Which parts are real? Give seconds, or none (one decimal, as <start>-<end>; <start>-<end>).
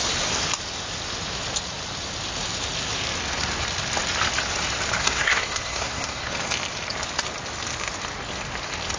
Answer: 0.0-5.0; 6.3-9.0